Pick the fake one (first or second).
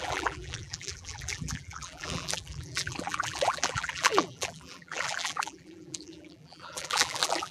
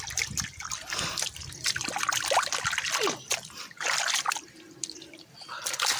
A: first